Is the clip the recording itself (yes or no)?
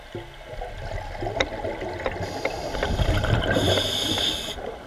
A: yes